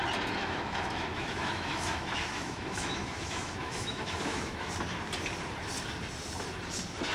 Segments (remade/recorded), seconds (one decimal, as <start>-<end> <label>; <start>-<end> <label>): 0.0-0.4 recorded; 0.4-4.7 remade; 4.7-7.1 recorded

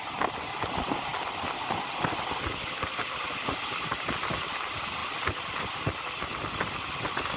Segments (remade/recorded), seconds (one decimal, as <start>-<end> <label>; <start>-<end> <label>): 0.0-7.4 recorded

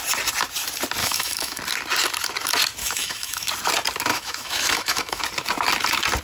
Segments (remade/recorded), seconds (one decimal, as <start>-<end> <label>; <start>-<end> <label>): 0.0-1.0 recorded; 1.0-1.6 remade; 1.6-2.8 recorded; 2.8-3.5 remade; 3.5-4.1 recorded; 4.1-5.2 remade; 5.2-6.2 recorded

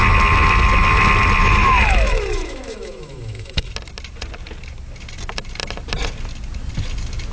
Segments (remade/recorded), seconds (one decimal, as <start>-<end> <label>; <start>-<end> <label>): 0.0-1.4 recorded; 1.4-3.7 remade; 3.7-7.3 recorded

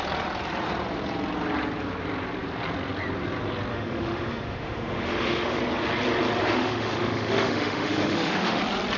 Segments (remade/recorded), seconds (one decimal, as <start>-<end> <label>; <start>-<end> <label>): 0.0-3.7 recorded; 3.7-5.6 remade; 5.6-6.4 recorded; 6.4-8.6 remade; 8.6-9.0 recorded

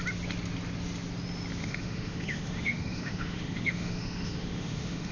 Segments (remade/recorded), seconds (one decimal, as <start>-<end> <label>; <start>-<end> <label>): 0.0-1.6 recorded; 1.6-5.1 remade